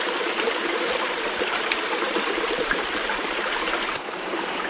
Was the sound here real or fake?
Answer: real